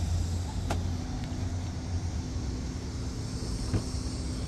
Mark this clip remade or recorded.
recorded